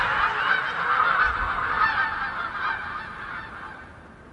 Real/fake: real